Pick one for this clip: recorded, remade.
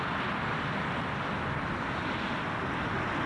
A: recorded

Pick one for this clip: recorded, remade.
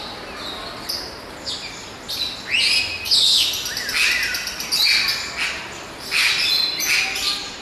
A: recorded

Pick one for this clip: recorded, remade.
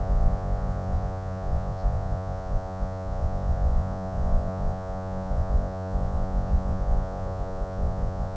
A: remade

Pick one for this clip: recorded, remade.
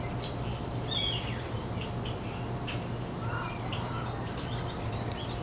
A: recorded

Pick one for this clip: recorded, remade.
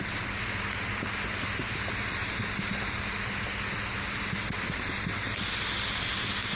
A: recorded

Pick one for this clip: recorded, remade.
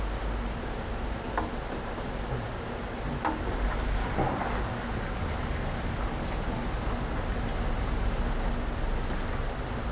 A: recorded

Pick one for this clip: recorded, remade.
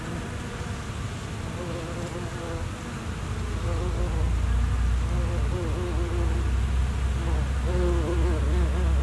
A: recorded